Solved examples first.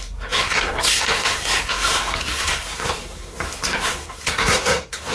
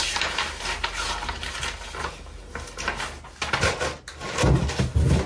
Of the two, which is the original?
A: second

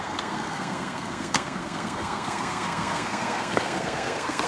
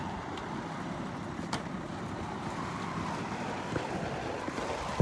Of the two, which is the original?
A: second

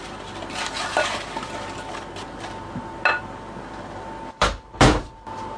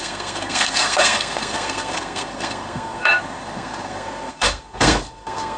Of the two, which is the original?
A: first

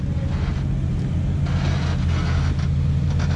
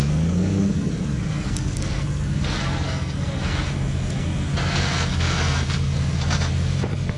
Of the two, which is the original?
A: first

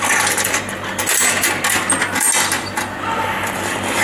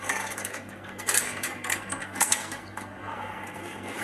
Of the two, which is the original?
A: first